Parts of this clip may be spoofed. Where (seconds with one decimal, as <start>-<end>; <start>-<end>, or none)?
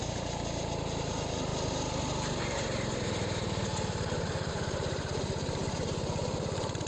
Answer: 0.0-6.9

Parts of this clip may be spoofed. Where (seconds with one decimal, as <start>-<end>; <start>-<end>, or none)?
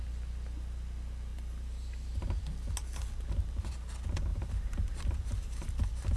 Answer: 1.3-2.1; 4.3-5.7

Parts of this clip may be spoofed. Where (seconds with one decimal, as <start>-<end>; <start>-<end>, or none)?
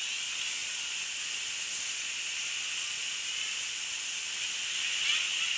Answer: none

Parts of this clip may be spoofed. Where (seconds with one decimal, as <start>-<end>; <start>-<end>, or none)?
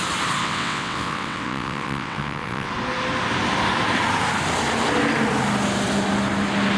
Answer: 0.4-2.7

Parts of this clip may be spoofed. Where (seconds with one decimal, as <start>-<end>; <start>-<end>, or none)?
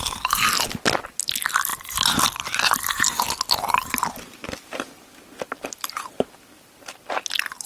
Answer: none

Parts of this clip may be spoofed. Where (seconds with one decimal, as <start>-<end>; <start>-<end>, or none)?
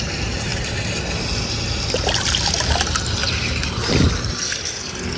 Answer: none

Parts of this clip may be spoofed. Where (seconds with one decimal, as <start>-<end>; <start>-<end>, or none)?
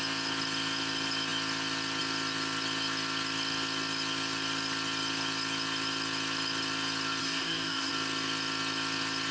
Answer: 7.2-7.9